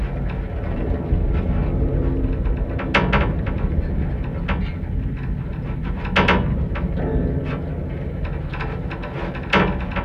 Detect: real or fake real